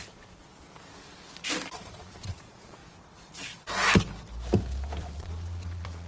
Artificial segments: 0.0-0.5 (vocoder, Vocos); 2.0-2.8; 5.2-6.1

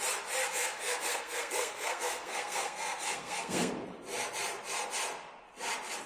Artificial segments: 0.4-3.7 (codec, SNAC)

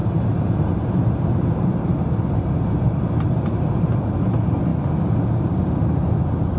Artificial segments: 0.0-4.0 (vocoder, BigVGAN v2)